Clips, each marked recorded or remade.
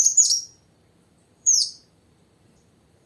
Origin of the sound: remade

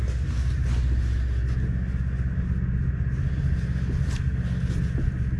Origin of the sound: recorded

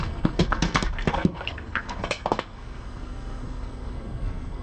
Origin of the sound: remade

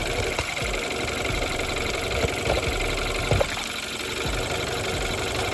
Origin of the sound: recorded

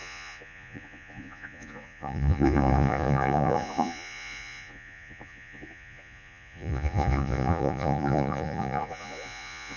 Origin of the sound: remade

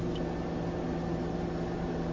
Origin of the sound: recorded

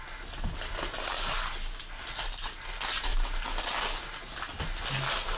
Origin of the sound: recorded